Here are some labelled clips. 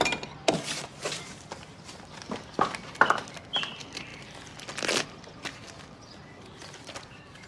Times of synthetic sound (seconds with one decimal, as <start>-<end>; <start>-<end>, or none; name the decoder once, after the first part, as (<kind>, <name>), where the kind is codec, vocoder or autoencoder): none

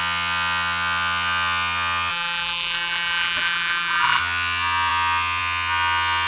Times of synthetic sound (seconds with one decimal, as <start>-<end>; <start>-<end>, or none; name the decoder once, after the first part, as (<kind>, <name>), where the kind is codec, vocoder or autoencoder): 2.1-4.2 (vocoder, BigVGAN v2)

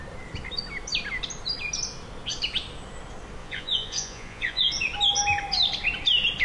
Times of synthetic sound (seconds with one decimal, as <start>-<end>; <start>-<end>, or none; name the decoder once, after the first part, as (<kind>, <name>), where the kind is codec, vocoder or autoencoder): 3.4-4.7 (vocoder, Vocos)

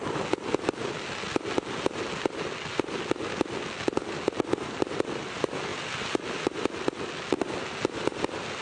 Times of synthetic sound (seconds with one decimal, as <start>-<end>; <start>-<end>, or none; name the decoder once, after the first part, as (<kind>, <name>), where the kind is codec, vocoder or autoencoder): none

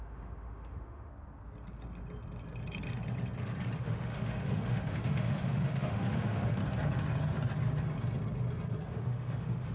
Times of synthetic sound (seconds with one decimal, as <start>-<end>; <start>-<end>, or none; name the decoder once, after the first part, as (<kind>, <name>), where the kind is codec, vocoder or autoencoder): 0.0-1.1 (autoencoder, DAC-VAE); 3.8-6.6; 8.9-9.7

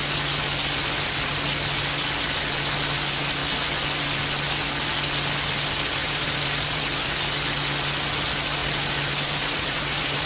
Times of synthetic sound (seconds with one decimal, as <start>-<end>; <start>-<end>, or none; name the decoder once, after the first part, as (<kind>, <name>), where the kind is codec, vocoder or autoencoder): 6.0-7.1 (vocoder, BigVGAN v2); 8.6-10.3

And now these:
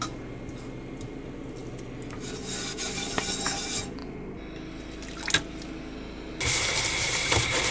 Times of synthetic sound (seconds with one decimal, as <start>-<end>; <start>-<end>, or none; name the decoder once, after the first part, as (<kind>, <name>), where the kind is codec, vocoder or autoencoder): none

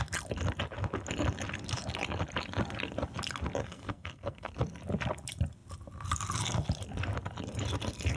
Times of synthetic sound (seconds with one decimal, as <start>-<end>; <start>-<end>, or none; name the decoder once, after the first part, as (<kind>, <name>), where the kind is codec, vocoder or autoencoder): 3.6-4.5 (codec, SNAC)